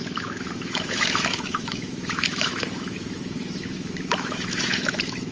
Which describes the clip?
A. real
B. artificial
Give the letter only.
B